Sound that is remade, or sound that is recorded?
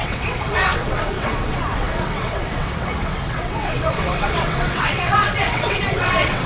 remade